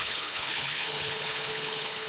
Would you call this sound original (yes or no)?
no